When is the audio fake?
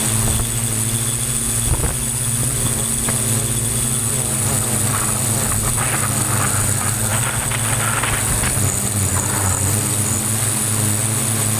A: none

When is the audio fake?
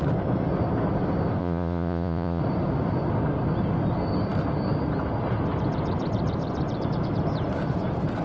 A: 1.4-2.4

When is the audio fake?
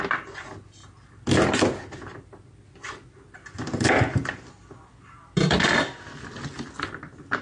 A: none